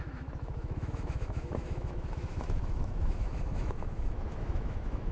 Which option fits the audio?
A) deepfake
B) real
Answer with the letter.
A